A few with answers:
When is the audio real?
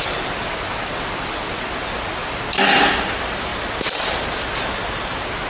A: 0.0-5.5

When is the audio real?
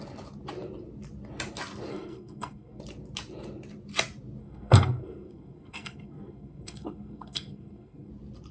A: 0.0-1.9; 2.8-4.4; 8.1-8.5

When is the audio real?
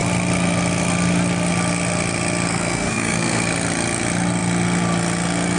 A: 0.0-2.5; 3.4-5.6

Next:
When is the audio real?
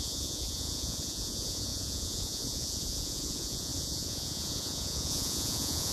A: none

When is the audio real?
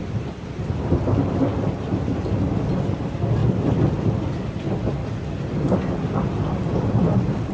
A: 0.0-7.5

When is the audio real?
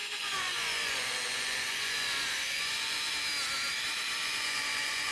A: 3.1-4.2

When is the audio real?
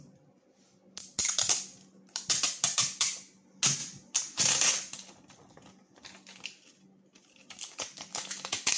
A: 0.0-8.1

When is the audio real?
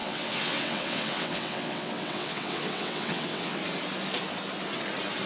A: 3.6-5.3